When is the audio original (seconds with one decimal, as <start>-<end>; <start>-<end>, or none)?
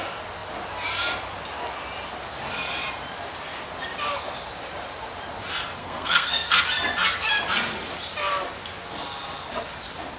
0.0-5.8; 6.6-10.2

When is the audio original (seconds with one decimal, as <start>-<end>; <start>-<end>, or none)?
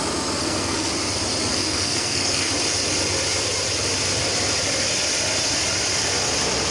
0.0-0.4; 0.9-1.5; 2.5-6.7